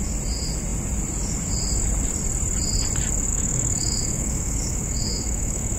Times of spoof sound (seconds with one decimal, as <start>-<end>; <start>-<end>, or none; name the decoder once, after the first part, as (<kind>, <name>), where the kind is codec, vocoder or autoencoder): 3.3-5.8 (autoencoder, DAC-VAE)